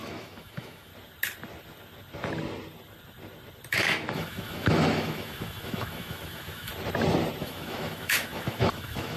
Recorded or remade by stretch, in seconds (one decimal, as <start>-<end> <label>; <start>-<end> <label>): 0.0-0.9 remade; 0.9-3.7 recorded; 3.7-6.7 remade; 6.7-7.4 recorded; 7.4-9.2 remade